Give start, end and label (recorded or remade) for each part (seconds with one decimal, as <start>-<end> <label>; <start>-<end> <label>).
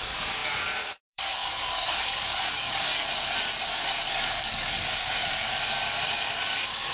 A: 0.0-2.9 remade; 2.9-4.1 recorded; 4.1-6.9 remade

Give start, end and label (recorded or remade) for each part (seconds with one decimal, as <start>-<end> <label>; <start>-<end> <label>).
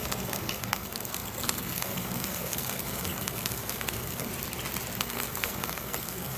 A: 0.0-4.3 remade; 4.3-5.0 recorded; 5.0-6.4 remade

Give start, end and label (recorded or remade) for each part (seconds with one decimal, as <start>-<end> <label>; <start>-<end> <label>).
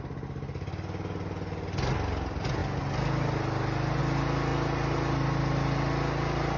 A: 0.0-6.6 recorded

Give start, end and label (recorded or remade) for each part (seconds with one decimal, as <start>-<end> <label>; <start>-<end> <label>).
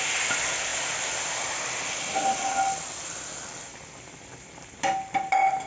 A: 0.0-5.7 recorded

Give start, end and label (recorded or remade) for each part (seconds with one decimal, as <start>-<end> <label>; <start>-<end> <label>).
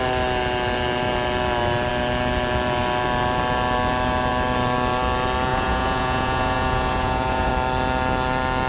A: 0.0-5.5 recorded; 5.5-7.5 remade; 7.5-8.7 recorded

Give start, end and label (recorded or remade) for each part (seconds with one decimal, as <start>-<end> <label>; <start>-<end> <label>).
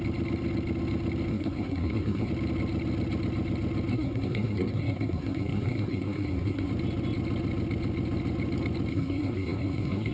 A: 0.0-1.3 recorded; 1.3-2.3 remade; 2.3-3.9 recorded; 3.9-6.7 remade; 6.7-8.9 recorded; 8.9-10.1 remade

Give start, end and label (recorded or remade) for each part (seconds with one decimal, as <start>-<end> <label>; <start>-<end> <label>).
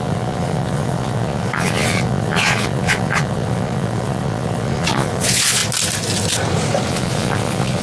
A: 0.0-5.6 remade; 5.6-6.9 recorded; 6.9-7.8 remade